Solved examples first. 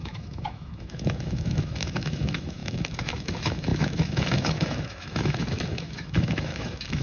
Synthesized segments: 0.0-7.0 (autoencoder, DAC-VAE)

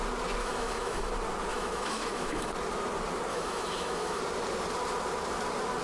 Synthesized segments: 0.4-1.1 (autoencoder, DAC-VAE); 1.5-2.5; 3.3-4.2

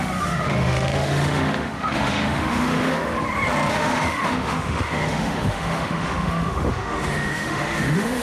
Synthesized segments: 0.0-3.1 (autoencoder, DAC-VAE); 3.7-8.2